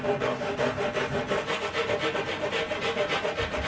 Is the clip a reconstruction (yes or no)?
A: no